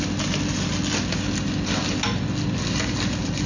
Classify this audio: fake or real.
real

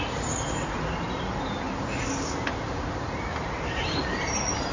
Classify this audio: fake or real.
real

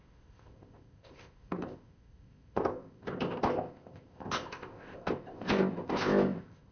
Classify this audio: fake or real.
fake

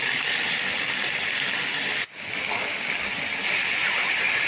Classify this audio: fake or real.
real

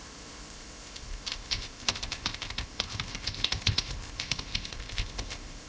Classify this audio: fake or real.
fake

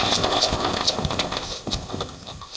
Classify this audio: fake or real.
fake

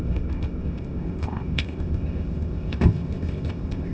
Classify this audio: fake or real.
fake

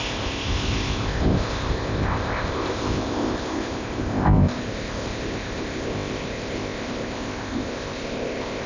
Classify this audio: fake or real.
fake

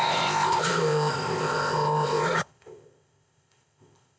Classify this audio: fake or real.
fake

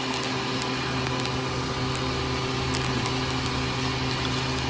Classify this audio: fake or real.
real